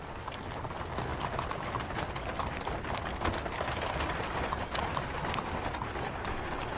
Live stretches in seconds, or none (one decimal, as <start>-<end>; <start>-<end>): 0.0-6.8